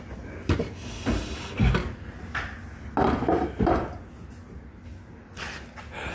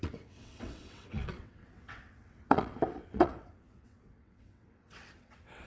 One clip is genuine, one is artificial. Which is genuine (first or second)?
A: first